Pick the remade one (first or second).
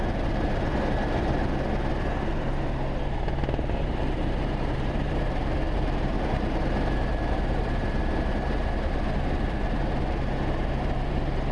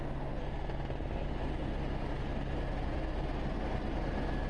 first